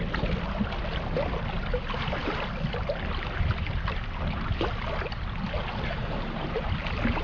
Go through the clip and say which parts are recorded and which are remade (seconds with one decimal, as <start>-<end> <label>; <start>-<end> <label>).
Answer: 0.0-7.2 recorded